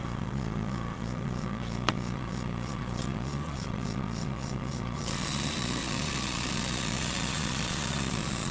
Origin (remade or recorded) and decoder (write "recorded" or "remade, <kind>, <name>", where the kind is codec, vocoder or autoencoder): remade, vocoder, Vocos